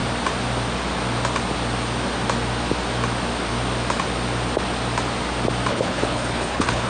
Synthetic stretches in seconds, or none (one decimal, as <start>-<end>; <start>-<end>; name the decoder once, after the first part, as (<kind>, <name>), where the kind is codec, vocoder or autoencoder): 5.7-6.9 (codec, HILCodec)